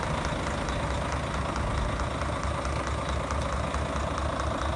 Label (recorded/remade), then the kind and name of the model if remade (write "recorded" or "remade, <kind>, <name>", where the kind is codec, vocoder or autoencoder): recorded